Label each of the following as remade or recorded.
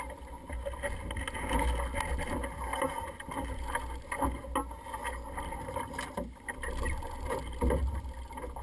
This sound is recorded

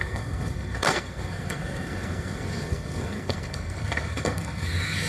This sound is remade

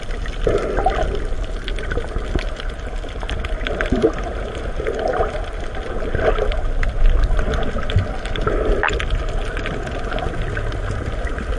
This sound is recorded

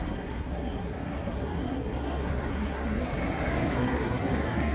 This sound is remade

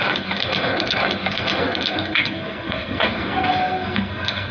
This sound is remade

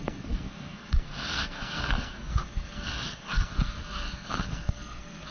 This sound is remade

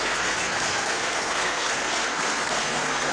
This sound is remade